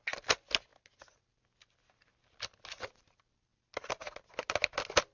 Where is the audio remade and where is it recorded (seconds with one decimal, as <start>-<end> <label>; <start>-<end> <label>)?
0.0-5.1 recorded